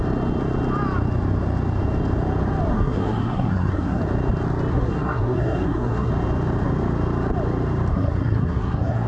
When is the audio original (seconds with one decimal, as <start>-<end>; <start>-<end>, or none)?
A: 0.0-2.7; 4.0-4.7; 6.1-7.9